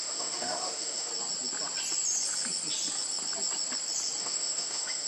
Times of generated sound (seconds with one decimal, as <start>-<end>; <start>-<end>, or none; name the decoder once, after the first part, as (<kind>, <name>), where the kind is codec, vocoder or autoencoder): 0.0-1.1 (autoencoder, DAC-VAE); 4.2-5.1